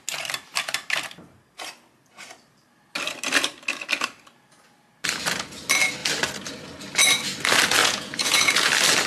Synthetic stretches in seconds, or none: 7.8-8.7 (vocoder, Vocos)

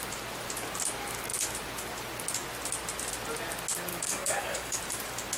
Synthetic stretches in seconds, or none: 3.9-4.8 (codec, DAC)

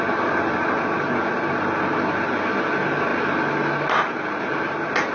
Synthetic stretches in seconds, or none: none